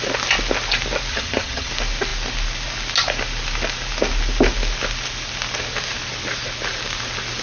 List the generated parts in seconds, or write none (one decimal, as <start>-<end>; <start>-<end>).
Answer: 1.1-1.7

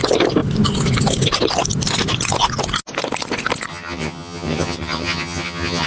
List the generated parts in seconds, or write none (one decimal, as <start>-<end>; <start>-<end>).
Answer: 3.7-5.9

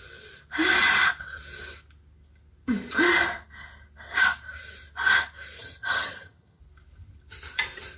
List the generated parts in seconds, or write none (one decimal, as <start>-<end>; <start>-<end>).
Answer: 5.6-6.6

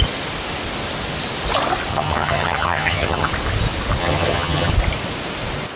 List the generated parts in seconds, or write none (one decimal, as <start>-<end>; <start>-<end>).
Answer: 1.9-3.3; 4.0-4.7